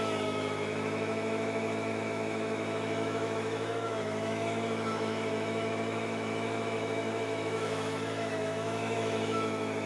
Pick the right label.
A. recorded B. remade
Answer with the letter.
B